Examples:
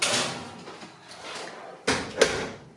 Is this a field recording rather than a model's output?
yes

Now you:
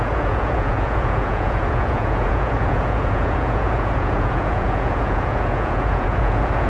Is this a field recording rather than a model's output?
no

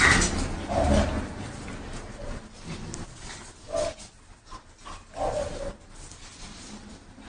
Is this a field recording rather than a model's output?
yes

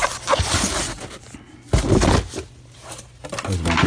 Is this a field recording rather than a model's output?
yes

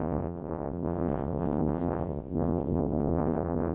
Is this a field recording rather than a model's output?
no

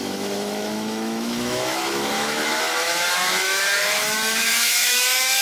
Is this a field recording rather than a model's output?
no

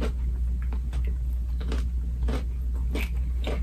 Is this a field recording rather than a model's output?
yes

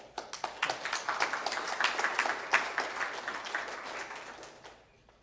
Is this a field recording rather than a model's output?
yes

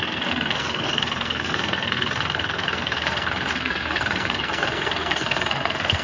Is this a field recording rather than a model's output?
no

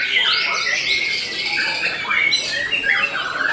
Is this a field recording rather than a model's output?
yes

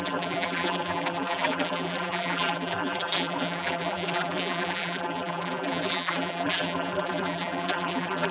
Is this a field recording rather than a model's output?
no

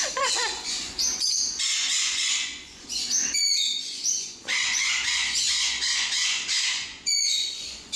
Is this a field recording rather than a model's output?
no